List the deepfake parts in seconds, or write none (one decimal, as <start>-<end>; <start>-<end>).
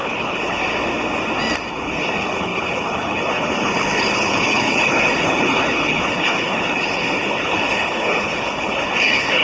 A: 0.0-0.6; 1.7-9.4